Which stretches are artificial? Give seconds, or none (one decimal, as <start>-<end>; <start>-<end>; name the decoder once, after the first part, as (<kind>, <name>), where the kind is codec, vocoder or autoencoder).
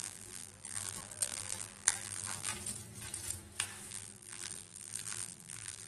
0.0-2.5 (vocoder, BigVGAN v2); 3.9-5.9